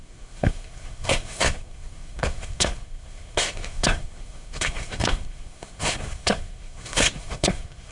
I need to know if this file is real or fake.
fake